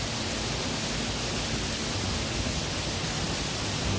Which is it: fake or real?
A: real